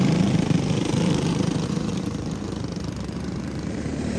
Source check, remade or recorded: remade